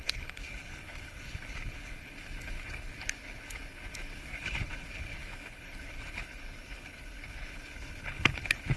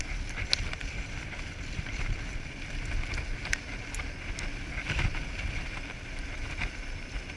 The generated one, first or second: first